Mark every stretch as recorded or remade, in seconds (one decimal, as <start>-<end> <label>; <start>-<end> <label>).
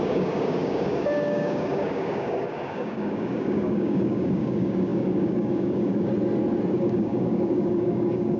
0.0-6.1 remade; 6.1-6.7 recorded; 6.7-8.4 remade